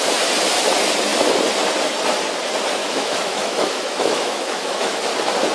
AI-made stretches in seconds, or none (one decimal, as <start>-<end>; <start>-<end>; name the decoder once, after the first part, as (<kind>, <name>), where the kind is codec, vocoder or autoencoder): 2.8-5.0 (autoencoder, DAC-VAE)